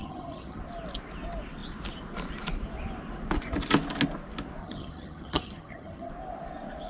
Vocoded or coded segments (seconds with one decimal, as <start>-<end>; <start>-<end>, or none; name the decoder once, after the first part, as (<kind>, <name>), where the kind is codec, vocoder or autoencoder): 0.0-0.6 (vocoder, HiFi-GAN); 4.6-6.1